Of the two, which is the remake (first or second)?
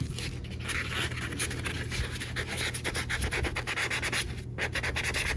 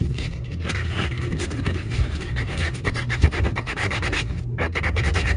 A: second